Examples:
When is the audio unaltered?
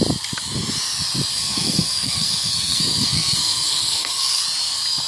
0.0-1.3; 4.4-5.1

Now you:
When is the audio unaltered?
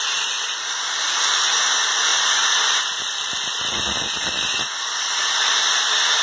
0.0-6.2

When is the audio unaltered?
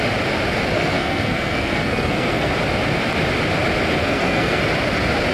0.0-0.7; 2.5-4.0; 4.6-5.3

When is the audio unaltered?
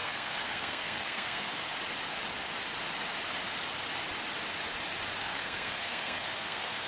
1.7-5.2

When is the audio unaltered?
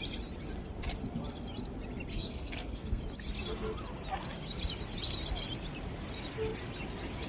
0.0-2.1; 3.0-7.3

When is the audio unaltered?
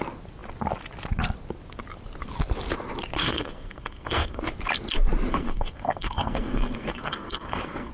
0.0-3.2; 4.4-5.3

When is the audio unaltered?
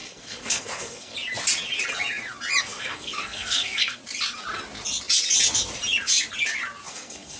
1.1-2.6; 4.0-6.9